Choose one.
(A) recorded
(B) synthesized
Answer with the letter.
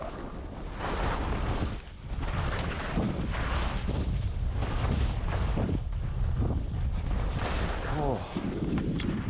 A